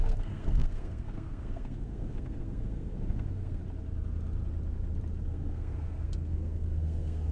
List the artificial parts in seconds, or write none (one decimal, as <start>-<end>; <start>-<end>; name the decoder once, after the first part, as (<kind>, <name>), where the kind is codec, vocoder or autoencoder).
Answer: 0.0-3.6 (codec, SNAC); 5.2-7.3